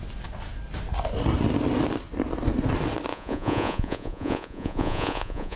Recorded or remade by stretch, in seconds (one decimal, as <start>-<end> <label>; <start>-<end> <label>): 0.0-3.1 recorded; 3.1-5.6 remade